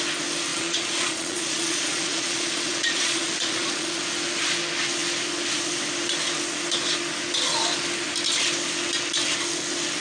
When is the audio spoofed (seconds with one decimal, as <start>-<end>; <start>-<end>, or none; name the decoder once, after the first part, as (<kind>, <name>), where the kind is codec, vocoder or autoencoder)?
0.5-4.0 (vocoder, Vocos)